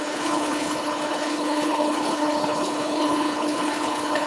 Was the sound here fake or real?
fake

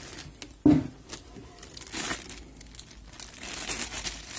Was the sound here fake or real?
real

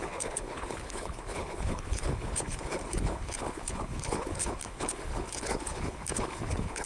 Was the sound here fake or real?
fake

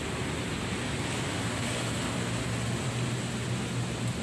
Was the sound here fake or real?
real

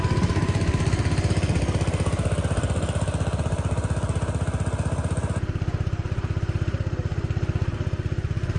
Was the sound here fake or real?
real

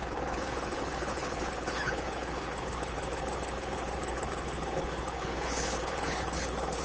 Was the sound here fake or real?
fake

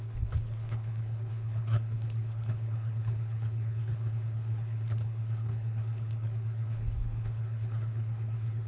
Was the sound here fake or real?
fake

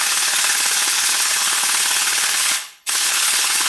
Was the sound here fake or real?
fake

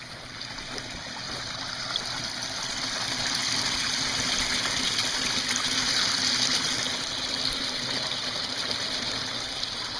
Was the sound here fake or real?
real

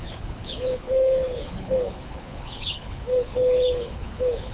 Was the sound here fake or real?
fake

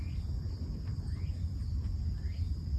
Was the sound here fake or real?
real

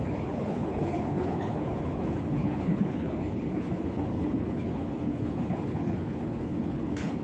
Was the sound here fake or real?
fake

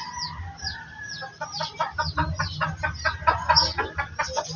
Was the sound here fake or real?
real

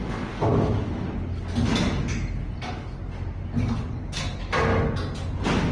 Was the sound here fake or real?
real